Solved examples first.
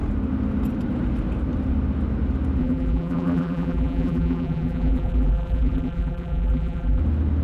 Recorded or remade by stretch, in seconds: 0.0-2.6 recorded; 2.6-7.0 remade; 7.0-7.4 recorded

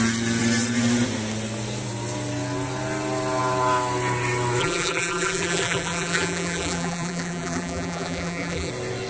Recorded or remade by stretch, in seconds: 0.0-4.6 recorded; 4.6-8.7 remade; 8.7-9.1 recorded